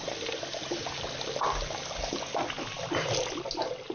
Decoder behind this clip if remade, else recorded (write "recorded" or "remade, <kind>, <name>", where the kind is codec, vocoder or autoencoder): recorded